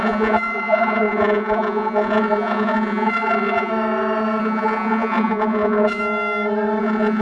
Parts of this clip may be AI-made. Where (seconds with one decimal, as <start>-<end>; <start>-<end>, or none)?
0.0-3.7; 4.4-6.0; 6.8-7.2

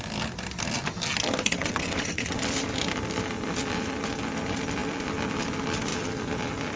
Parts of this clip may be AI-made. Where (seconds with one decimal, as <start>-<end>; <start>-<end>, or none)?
1.5-2.4

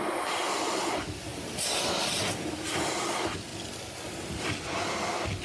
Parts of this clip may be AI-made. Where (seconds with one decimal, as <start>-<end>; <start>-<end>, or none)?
none

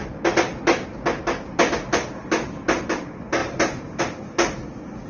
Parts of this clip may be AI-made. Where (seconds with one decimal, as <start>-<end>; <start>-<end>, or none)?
3.4-4.0